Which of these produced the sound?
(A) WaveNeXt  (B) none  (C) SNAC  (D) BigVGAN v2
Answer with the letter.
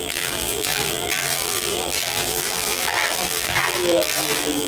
D